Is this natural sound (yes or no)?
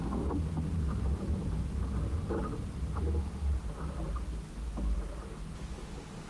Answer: yes